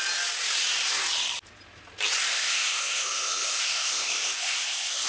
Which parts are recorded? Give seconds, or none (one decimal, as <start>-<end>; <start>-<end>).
0.0-2.3